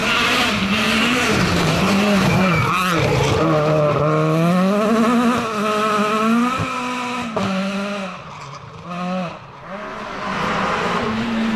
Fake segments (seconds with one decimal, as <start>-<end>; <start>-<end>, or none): 0.0-3.4